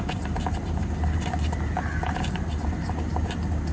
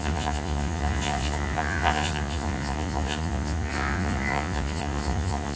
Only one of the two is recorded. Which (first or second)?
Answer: first